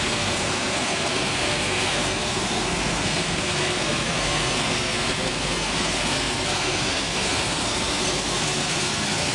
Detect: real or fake fake